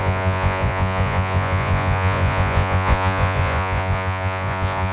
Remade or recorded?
remade